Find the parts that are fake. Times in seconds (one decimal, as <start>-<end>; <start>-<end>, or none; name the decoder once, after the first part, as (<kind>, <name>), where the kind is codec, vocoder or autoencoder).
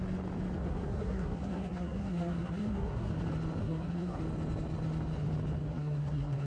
0.6-3.1 (codec, SNAC); 3.6-4.2; 5.6-6.5